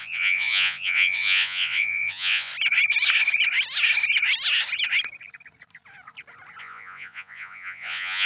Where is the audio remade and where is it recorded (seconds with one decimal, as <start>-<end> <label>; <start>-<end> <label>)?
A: 0.0-2.5 remade; 2.5-6.6 recorded; 6.6-8.3 remade